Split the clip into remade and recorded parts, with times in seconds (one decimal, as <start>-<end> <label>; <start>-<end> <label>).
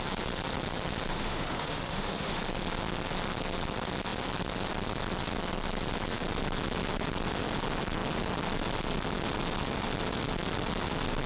0.0-1.1 recorded; 1.1-2.4 remade; 2.4-11.3 recorded